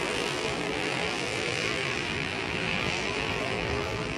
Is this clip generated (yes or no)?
yes